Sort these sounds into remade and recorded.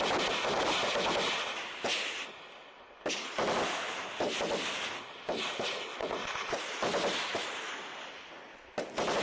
recorded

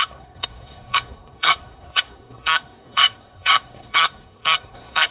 remade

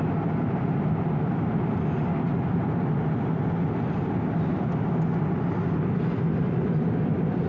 recorded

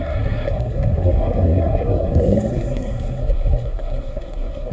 remade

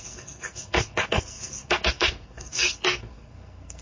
remade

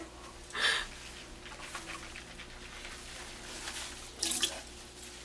recorded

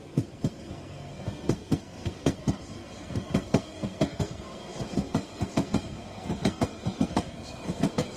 remade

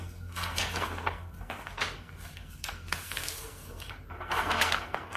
remade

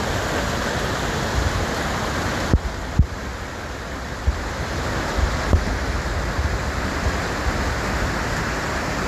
recorded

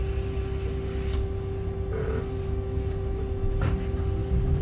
recorded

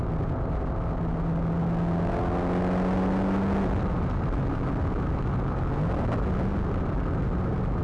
recorded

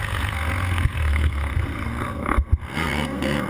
remade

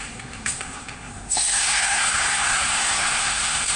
remade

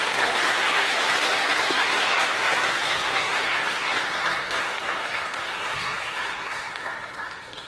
remade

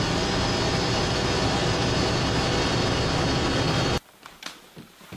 recorded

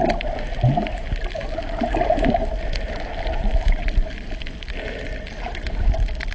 recorded